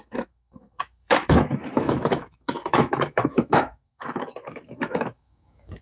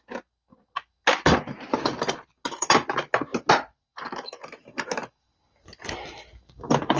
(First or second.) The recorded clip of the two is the second